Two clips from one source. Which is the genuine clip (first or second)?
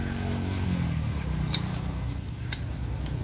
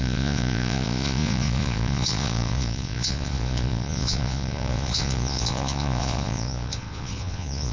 first